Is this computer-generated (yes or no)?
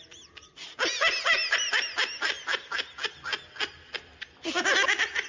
no